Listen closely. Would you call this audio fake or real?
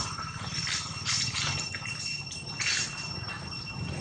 real